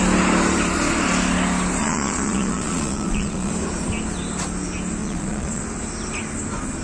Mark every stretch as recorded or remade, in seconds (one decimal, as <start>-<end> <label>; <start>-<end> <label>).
0.0-1.8 recorded; 1.8-3.5 remade; 3.5-5.0 recorded; 5.0-5.6 remade; 5.6-6.8 recorded

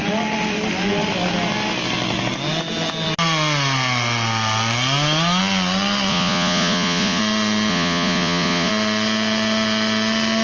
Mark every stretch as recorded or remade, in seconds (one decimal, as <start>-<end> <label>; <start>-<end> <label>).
0.0-6.1 recorded; 6.1-7.2 remade; 7.2-7.7 recorded; 7.7-8.7 remade; 8.7-10.4 recorded

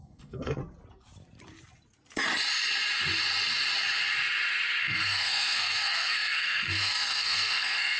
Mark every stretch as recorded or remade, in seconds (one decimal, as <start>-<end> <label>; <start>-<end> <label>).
0.0-0.6 remade; 0.6-4.8 recorded; 4.8-8.0 remade

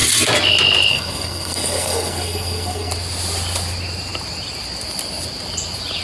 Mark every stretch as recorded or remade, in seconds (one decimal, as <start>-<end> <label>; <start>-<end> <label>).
0.0-0.9 recorded; 0.9-2.9 remade; 2.9-6.0 recorded

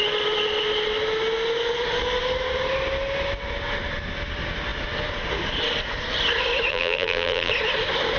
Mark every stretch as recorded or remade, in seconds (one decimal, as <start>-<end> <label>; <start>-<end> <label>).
0.0-6.7 recorded; 6.7-7.5 remade; 7.5-8.2 recorded

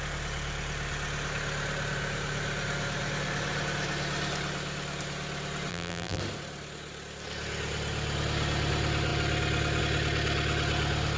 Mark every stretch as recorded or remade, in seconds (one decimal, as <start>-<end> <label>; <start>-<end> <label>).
0.0-5.7 recorded; 5.7-6.2 remade; 6.2-11.2 recorded

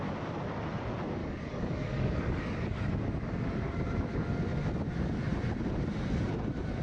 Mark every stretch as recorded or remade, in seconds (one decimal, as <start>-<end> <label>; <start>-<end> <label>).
0.0-1.2 recorded; 1.2-3.7 remade; 3.7-6.8 recorded